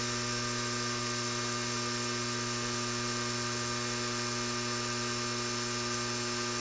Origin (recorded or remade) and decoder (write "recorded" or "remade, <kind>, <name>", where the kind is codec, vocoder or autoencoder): recorded